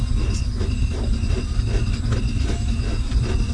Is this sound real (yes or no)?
yes